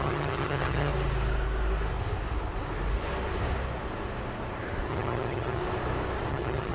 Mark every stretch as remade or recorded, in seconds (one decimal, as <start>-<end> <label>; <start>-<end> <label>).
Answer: 0.0-0.9 remade; 0.9-4.9 recorded; 4.9-5.6 remade; 5.6-6.3 recorded; 6.3-6.7 remade